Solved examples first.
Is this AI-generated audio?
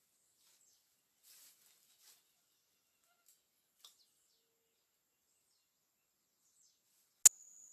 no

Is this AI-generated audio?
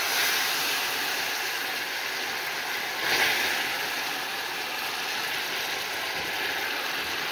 no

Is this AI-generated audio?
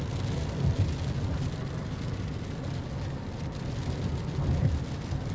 no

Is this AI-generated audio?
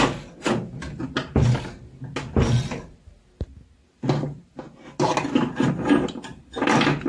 no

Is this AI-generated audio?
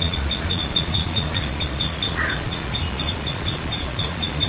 yes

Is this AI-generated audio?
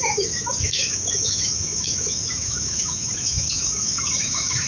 yes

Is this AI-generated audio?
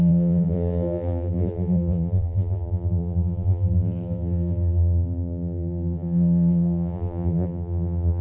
yes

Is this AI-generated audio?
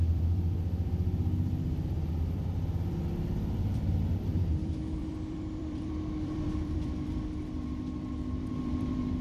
yes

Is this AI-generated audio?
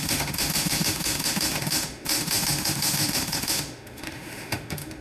yes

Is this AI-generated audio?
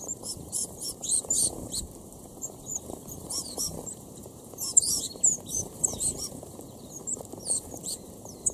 yes